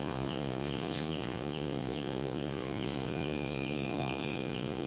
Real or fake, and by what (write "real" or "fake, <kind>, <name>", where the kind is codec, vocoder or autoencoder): fake, vocoder, Vocos